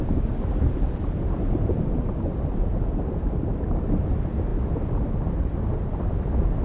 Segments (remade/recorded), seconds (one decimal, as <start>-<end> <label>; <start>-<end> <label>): 0.0-6.6 recorded